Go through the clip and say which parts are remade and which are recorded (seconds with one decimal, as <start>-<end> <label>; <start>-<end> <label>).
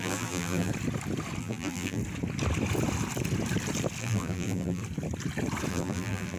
0.0-0.7 remade; 0.7-1.4 recorded; 1.4-2.0 remade; 2.0-4.0 recorded; 4.0-4.8 remade; 4.8-5.7 recorded; 5.7-6.4 remade